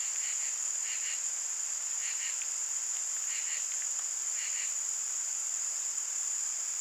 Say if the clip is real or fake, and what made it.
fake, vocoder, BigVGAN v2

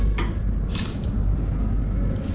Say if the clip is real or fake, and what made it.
real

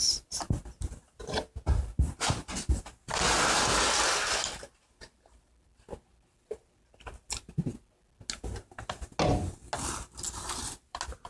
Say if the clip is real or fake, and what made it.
real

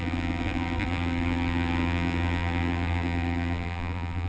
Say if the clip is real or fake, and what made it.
fake, vocoder, BigVGAN v2